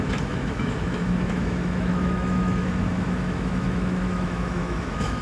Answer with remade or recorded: remade